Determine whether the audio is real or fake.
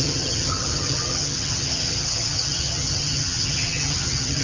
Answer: fake